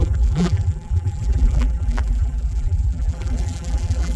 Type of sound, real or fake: fake